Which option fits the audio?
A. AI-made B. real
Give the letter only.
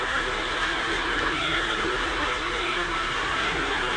A